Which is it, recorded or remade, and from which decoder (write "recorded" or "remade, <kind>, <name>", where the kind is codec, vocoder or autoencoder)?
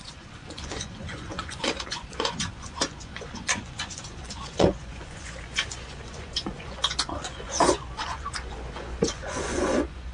remade, vocoder, Vocos